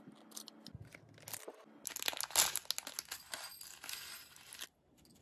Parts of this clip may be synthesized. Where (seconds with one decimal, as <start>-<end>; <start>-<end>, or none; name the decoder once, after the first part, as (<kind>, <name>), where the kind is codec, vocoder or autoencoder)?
none